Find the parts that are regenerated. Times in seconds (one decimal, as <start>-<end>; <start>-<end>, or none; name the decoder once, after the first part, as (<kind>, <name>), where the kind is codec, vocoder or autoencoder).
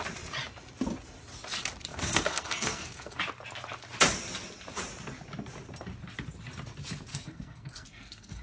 1.9-3.2 (codec, SNAC); 7.1-8.4